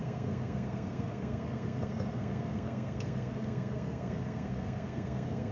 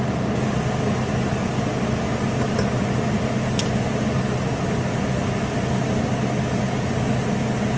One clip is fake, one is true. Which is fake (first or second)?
first